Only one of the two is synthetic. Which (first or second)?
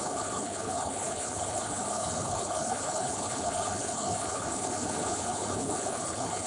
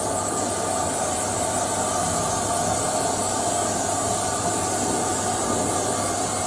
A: first